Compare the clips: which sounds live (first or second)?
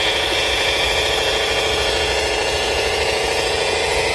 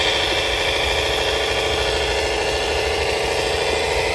second